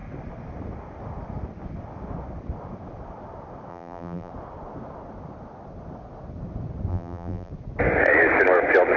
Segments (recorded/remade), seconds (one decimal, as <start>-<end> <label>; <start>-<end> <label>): 0.0-3.7 recorded; 3.7-4.3 remade; 4.3-6.9 recorded; 6.9-7.5 remade; 7.5-9.0 recorded